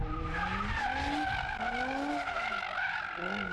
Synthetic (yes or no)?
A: no